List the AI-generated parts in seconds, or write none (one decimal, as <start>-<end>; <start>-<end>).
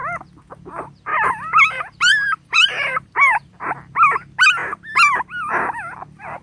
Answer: 1.1-3.9